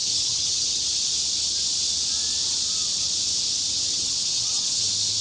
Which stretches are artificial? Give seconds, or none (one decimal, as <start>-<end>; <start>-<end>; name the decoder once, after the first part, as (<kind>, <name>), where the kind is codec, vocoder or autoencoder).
0.0-0.8 (vocoder, HiFi-GAN); 3.9-4.8

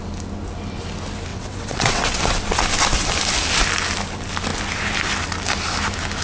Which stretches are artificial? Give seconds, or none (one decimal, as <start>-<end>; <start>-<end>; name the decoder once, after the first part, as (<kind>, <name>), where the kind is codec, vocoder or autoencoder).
1.3-2.2 (vocoder, WaveNeXt)

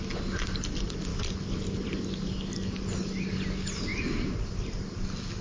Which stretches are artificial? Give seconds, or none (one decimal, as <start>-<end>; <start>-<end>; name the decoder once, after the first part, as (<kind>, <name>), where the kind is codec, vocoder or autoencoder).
none

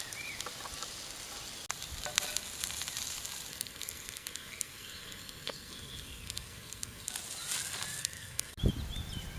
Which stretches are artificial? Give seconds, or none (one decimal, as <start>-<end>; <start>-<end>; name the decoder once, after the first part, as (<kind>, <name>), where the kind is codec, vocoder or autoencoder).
3.5-7.1 (codec, SNAC); 8.0-8.6

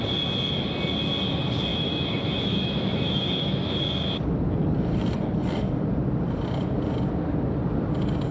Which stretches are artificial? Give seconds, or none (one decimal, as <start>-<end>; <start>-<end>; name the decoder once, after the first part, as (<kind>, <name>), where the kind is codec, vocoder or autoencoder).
1.7-3.8 (autoencoder, DAC-VAE)